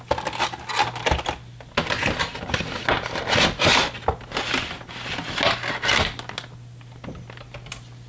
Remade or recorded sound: recorded